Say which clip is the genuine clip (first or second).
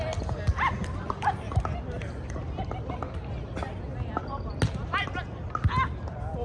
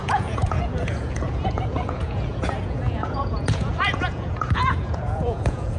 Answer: first